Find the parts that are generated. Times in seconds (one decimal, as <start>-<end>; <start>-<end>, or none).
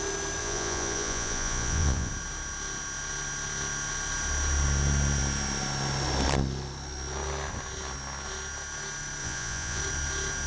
0.4-2.1; 9.2-9.8